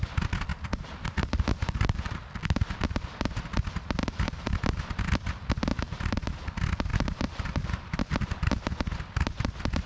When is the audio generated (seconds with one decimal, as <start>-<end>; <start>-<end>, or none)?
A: 0.5-2.3; 4.0-4.6; 5.7-6.5; 6.9-8.0